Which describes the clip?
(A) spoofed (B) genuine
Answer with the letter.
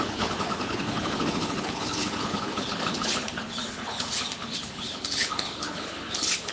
A